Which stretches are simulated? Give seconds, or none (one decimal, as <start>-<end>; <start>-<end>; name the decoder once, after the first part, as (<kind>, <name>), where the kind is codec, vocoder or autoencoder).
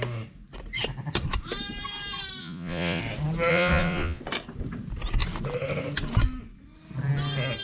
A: 2.4-3.0 (vocoder, Vocos); 3.5-4.2